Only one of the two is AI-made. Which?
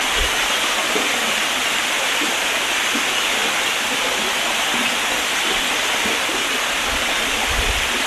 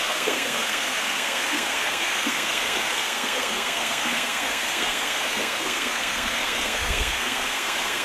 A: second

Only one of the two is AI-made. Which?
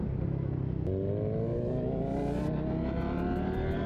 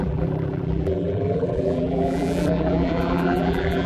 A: second